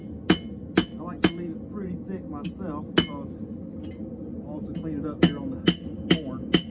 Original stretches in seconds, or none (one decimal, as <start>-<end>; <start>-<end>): 0.0-6.7